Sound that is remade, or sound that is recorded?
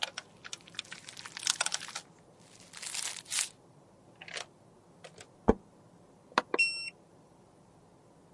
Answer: recorded